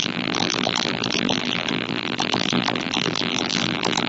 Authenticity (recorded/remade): remade